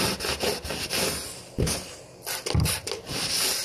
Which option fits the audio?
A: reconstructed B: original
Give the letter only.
B